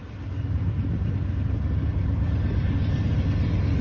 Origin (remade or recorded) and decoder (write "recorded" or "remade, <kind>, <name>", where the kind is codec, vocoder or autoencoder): recorded